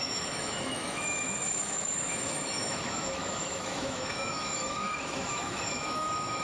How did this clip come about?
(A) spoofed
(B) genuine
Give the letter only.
A